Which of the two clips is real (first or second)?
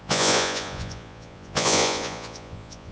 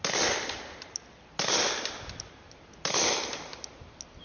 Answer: second